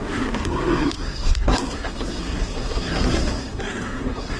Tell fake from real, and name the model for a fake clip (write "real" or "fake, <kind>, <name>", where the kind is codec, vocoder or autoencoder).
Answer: fake, codec, SNAC